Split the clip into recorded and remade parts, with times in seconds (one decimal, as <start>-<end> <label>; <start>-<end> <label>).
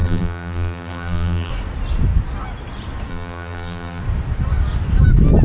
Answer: 0.0-1.5 remade; 1.5-3.1 recorded; 3.1-4.0 remade; 4.0-5.4 recorded